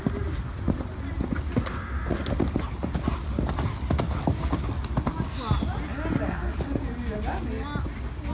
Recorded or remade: recorded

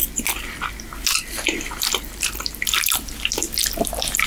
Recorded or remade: recorded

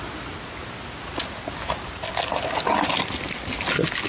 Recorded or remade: recorded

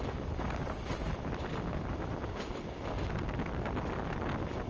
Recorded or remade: recorded